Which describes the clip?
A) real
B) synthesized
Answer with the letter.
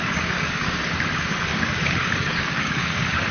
B